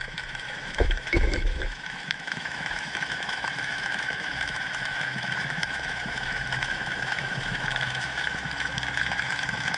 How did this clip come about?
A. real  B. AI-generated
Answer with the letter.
B